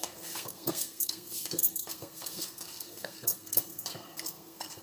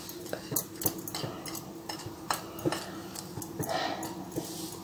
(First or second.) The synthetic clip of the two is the first